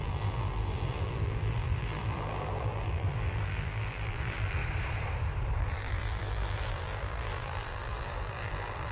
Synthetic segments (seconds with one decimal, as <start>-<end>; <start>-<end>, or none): 0.0-4.6; 5.6-8.9